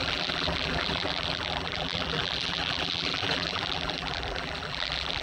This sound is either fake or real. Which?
fake